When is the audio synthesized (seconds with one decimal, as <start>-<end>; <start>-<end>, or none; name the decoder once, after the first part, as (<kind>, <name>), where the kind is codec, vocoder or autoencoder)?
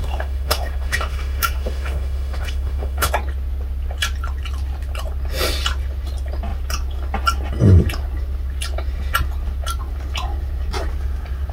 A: 0.0-3.1 (autoencoder, DAC-VAE)